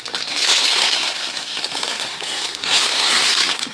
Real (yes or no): no